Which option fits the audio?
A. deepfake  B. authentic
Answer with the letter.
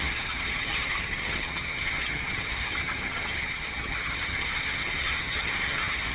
A